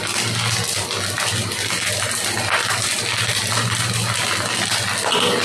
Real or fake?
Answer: real